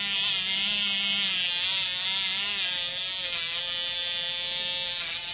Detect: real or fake real